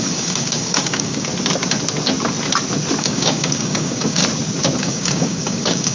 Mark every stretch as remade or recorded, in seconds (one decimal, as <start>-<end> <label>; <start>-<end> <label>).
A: 0.0-1.3 remade; 1.3-3.0 recorded; 3.0-4.2 remade; 4.2-4.8 recorded; 4.8-5.9 remade